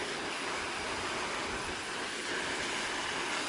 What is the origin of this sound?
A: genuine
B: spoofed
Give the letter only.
A